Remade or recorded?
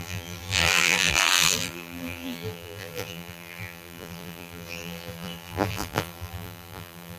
remade